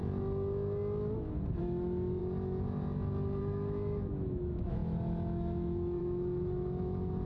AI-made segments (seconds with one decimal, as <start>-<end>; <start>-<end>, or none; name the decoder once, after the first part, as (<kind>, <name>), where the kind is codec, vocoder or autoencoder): 1.6-2.2 (autoencoder, DAC-VAE); 3.4-7.3